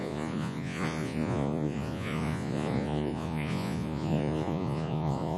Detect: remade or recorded remade